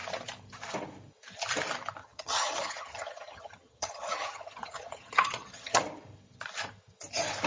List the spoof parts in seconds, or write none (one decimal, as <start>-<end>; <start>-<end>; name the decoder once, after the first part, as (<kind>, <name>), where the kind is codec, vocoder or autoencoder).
2.0-5.8 (vocoder, HiFi-GAN)